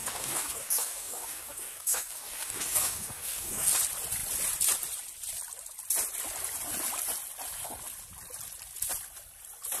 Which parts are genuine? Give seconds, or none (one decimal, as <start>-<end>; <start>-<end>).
3.7-9.8